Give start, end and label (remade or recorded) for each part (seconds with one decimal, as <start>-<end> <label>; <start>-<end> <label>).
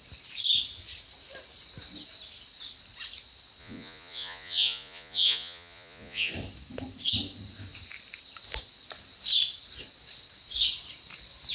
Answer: 0.0-3.6 recorded; 3.6-6.3 remade; 6.3-11.5 recorded